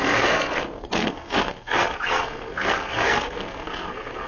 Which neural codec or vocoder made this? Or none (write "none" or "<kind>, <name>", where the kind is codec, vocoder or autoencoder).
codec, SNAC